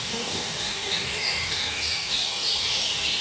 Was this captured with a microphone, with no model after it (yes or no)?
no